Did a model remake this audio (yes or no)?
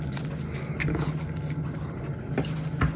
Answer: no